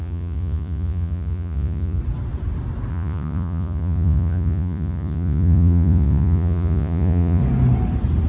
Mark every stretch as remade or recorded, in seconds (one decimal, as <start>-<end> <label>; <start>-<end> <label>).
0.0-2.0 remade; 2.0-2.9 recorded; 2.9-7.4 remade; 7.4-8.3 recorded